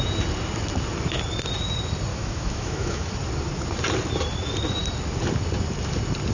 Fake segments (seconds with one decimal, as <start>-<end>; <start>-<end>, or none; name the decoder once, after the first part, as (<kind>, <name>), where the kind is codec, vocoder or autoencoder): 2.1-3.1 (autoencoder, DAC-VAE)